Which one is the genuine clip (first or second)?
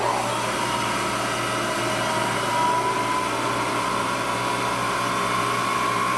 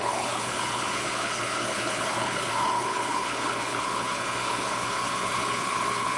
first